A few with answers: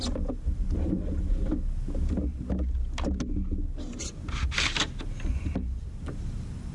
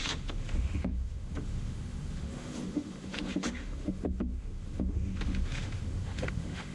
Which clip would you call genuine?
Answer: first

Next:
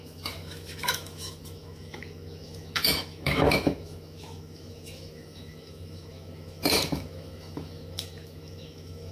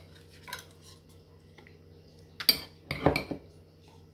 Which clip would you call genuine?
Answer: second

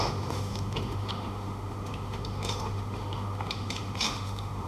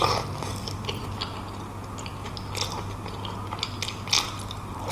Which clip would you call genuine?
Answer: second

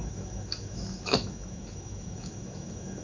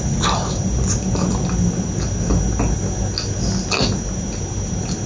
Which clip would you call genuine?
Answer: second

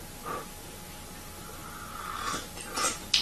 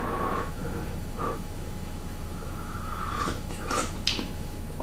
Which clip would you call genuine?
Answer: first